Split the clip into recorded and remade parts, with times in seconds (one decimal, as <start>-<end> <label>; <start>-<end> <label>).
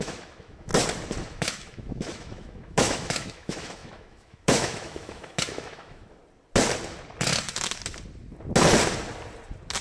0.0-0.7 remade; 0.7-1.3 recorded; 1.3-6.2 remade; 6.2-9.8 recorded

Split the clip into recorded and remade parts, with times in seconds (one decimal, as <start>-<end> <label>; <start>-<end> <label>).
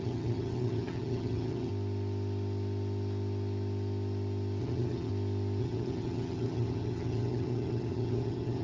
0.0-1.7 remade; 1.7-4.6 recorded; 4.6-5.1 remade; 5.1-5.6 recorded; 5.6-8.6 remade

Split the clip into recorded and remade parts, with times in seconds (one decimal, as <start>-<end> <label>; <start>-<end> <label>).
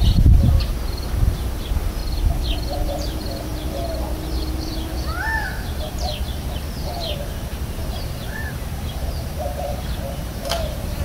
0.0-2.0 remade; 2.0-2.9 recorded; 2.9-3.5 remade; 3.5-4.7 recorded; 4.7-11.0 remade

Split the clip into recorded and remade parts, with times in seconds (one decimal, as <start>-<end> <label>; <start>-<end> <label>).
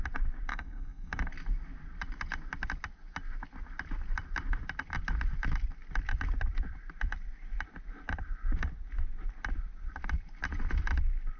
0.0-0.5 recorded; 0.5-1.1 remade; 1.1-11.4 recorded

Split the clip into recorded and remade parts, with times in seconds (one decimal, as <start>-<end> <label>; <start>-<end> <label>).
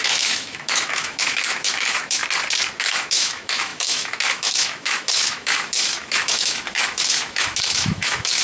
0.0-2.2 remade; 2.2-2.8 recorded; 2.8-8.4 remade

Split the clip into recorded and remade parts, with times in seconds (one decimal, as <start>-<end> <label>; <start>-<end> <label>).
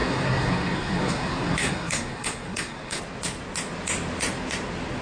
0.0-3.0 remade; 3.0-5.0 recorded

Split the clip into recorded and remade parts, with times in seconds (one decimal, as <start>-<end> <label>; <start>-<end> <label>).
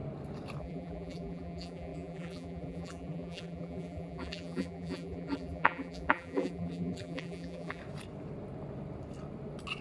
0.0-0.6 recorded; 0.6-7.8 remade; 7.8-9.8 recorded